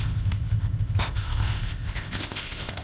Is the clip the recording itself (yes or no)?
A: no